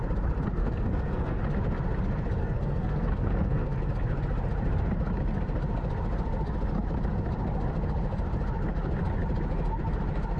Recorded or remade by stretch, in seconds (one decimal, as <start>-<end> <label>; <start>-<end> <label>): 0.0-0.6 recorded; 0.6-1.4 remade; 1.4-2.4 recorded; 2.4-3.8 remade; 3.8-10.4 recorded